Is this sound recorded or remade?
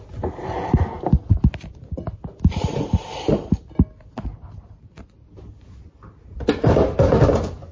recorded